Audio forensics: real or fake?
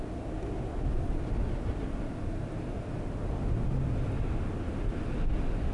real